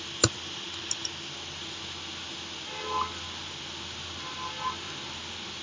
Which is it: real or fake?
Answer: real